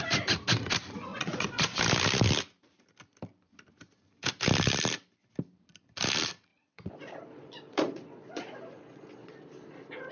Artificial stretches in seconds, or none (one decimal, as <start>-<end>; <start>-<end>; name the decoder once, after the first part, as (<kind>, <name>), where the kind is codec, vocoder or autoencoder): 1.1-1.8 (vocoder, Vocos); 6.5-9.3